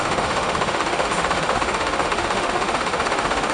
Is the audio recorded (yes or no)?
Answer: no